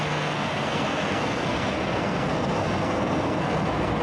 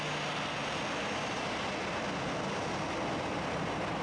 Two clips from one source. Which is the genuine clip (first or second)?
second